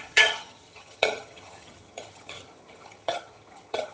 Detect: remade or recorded remade